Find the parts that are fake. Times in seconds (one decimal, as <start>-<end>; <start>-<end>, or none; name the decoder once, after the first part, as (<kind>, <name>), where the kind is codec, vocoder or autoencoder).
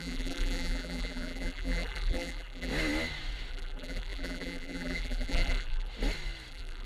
0.0-2.7 (vocoder, BigVGAN v2); 3.5-5.9; 6.5-6.9